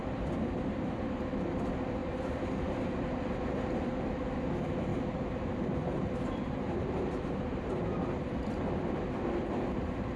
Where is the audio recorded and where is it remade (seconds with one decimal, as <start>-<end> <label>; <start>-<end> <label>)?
0.0-2.0 recorded; 2.0-3.2 remade; 3.2-4.9 recorded; 4.9-7.4 remade; 7.4-10.2 recorded